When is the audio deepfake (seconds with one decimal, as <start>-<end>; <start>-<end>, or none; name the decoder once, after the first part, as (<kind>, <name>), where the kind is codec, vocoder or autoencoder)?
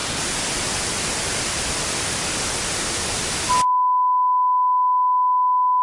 none